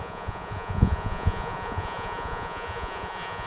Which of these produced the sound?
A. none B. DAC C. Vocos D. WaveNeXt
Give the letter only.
C